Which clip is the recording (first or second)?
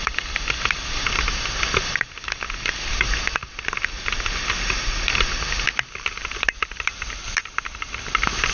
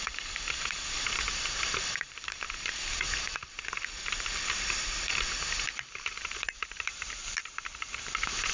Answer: first